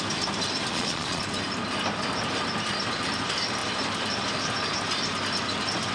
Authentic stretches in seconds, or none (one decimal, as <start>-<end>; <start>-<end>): 0.0-0.7; 1.2-5.9